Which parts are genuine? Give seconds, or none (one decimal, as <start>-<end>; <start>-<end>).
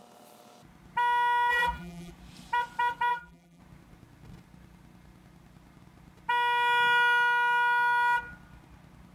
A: 0.0-1.5; 2.1-3.1; 3.6-9.1